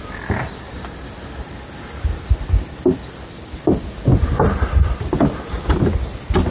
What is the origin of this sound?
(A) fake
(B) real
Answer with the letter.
B